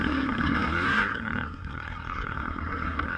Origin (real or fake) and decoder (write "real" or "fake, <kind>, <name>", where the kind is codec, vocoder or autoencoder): fake, codec, SNAC